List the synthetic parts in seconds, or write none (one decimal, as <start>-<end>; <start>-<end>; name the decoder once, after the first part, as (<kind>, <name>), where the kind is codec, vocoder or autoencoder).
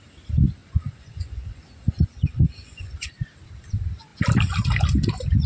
0.6-3.1 (vocoder, Vocos)